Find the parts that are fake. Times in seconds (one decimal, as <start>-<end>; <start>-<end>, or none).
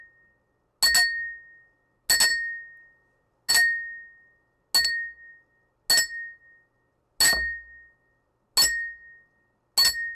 none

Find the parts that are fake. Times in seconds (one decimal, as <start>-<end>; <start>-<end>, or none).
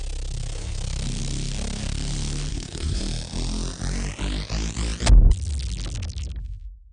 2.5-3.0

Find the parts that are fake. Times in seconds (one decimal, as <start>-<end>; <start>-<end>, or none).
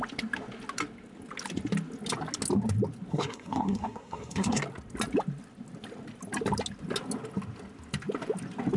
3.1-4.6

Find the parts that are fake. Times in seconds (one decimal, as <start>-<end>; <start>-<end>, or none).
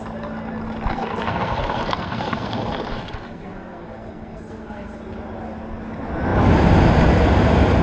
0.9-5.0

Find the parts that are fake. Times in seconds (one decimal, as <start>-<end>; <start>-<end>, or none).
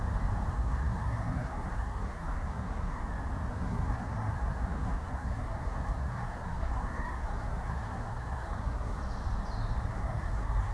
0.5-3.0; 3.5-9.0; 9.9-10.7